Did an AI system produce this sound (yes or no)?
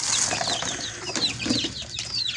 no